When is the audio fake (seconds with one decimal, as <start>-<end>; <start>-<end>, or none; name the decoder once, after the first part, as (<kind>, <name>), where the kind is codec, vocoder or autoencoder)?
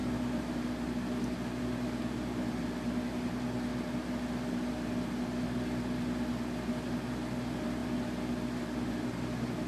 none